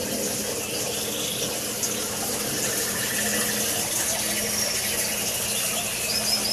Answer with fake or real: real